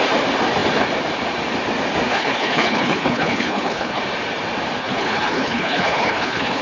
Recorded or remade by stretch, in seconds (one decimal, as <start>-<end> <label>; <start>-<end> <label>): 0.0-2.1 recorded; 2.1-4.0 remade; 4.0-4.8 recorded; 4.8-6.6 remade